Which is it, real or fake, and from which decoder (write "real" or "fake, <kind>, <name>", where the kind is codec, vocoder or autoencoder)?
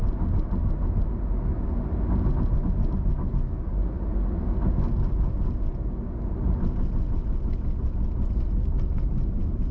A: real